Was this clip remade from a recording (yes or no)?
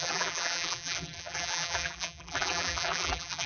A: yes